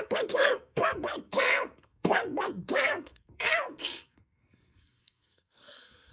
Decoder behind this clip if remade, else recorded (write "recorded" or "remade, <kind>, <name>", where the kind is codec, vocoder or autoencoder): remade, codec, SNAC